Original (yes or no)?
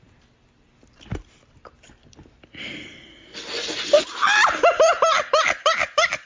yes